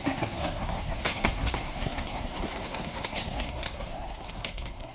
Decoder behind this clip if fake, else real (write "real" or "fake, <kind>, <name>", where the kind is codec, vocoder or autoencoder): fake, codec, SNAC